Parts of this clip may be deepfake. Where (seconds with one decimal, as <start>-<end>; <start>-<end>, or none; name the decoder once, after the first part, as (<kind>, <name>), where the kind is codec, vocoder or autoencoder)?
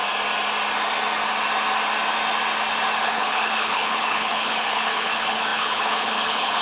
3.0-6.6 (codec, HILCodec)